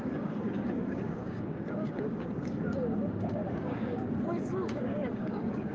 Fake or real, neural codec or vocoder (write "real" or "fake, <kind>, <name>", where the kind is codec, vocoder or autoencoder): fake, codec, DAC